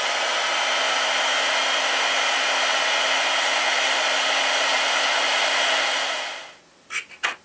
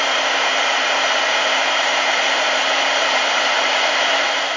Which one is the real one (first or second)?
first